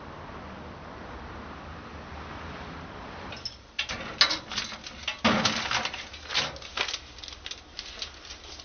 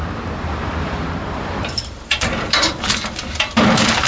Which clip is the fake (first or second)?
second